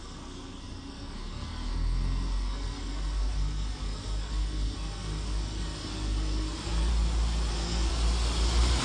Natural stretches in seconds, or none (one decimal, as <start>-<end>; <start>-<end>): 6.9-7.5; 7.9-8.8